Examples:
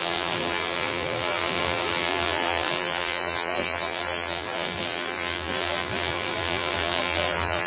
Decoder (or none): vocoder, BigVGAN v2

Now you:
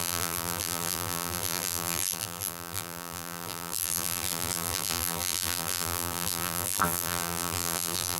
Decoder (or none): vocoder, BigVGAN v2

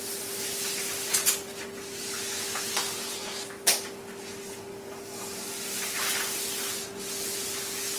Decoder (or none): none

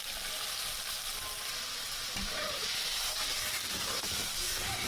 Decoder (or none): vocoder, BigVGAN v2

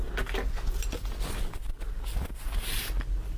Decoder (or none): none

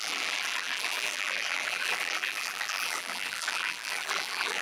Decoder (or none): vocoder, BigVGAN v2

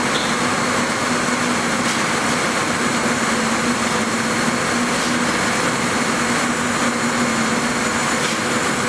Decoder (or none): none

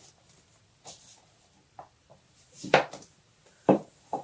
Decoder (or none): vocoder, BigVGAN v2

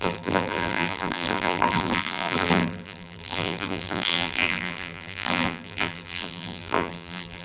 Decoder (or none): vocoder, BigVGAN v2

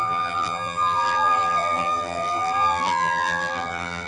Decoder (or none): vocoder, BigVGAN v2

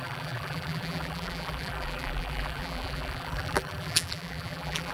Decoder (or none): vocoder, BigVGAN v2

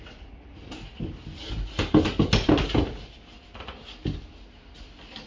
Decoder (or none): none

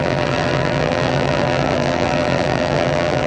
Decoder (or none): vocoder, BigVGAN v2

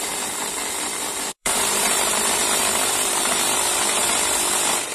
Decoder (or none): vocoder, BigVGAN v2